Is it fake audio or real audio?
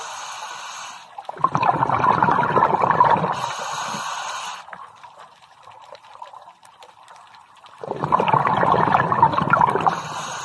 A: fake